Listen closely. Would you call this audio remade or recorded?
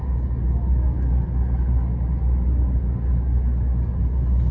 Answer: recorded